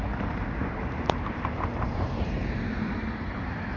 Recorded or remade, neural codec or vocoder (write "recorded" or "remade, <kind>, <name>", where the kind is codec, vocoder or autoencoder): remade, vocoder, BigVGAN v2